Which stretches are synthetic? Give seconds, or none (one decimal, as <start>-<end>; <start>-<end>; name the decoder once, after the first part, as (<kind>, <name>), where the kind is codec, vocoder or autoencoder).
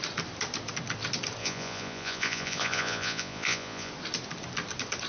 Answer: 1.4-3.9 (vocoder, Vocos)